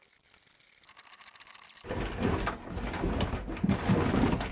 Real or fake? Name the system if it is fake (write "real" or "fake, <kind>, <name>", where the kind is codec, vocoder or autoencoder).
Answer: real